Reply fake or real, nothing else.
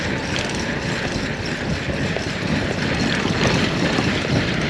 real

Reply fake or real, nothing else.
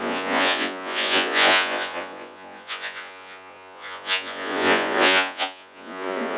fake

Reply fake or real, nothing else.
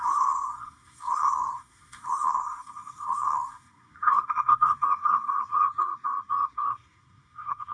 fake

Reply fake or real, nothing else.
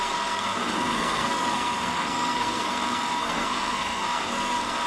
fake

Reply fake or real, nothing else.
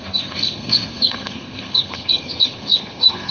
fake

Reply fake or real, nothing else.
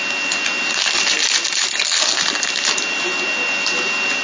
real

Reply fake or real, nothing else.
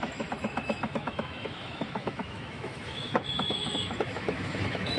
fake